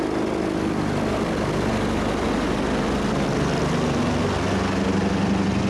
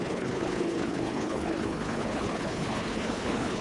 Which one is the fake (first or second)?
second